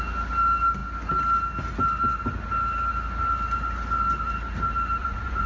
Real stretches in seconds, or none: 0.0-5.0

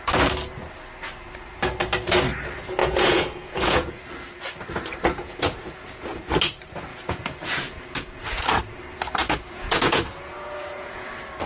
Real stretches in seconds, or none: 0.0-2.8; 4.0-5.2; 6.2-6.9; 8.6-9.2; 11.1-11.5

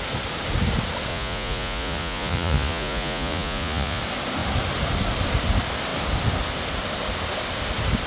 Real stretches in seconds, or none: 0.0-1.1; 4.0-8.1